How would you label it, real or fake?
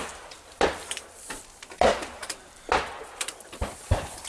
real